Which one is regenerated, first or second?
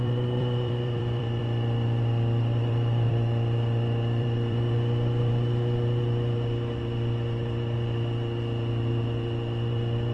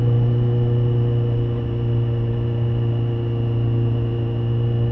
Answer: first